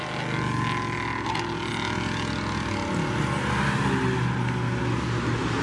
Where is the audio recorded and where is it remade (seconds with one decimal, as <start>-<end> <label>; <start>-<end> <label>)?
0.0-5.6 recorded